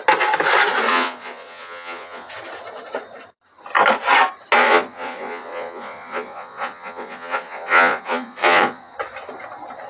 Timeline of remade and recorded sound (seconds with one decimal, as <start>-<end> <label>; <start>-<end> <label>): 0.0-0.9 recorded; 0.9-2.3 remade; 2.3-4.6 recorded; 4.6-8.9 remade; 8.9-9.9 recorded